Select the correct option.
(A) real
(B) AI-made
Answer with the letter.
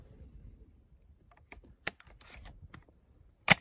A